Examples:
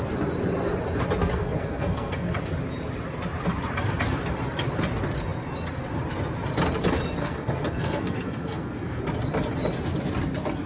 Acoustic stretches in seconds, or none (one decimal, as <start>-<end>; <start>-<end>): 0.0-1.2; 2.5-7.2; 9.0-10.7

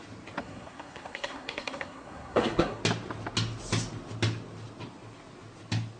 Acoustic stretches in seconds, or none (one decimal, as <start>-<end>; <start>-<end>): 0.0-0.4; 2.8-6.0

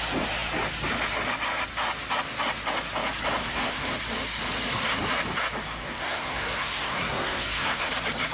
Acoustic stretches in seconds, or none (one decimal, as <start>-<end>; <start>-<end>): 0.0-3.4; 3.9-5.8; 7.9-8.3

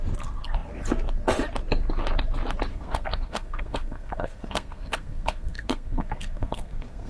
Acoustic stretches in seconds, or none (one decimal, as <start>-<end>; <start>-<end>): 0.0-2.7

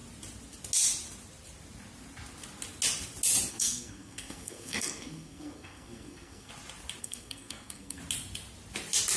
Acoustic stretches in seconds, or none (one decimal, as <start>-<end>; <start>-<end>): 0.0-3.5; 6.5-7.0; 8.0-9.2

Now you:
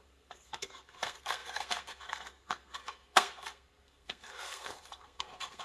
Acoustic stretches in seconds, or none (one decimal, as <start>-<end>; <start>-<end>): none